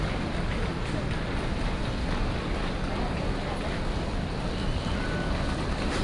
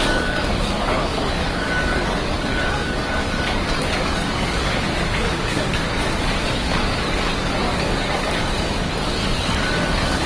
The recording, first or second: first